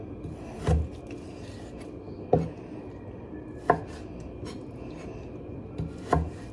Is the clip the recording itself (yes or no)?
yes